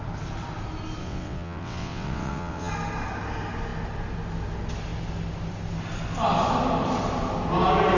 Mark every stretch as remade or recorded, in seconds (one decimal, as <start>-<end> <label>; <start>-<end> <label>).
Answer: 0.0-1.0 recorded; 1.0-2.7 remade; 2.7-8.0 recorded